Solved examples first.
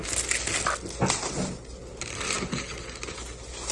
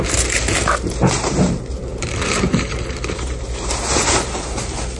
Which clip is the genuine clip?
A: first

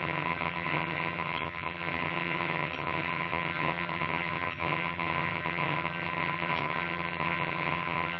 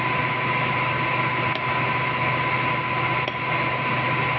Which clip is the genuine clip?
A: second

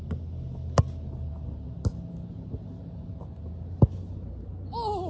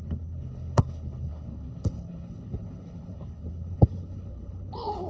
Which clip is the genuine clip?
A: first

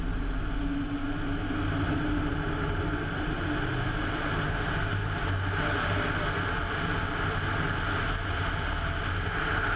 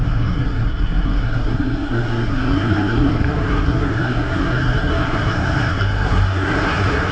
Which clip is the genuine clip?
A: first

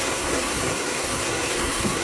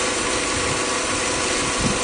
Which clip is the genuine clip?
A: second